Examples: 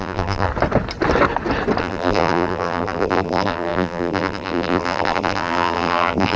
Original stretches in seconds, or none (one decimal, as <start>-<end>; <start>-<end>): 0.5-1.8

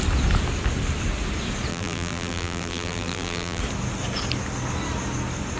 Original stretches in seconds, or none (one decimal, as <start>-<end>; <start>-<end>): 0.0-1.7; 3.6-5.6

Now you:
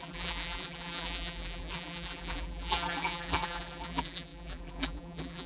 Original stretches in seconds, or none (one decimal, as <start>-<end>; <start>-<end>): none